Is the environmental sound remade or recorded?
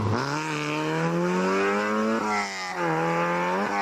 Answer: recorded